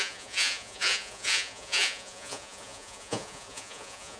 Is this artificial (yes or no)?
yes